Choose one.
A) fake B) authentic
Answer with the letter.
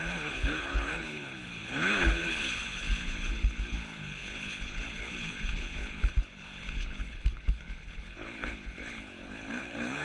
A